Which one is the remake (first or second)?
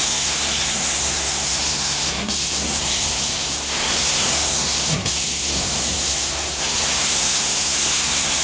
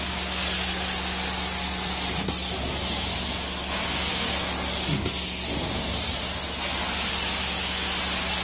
first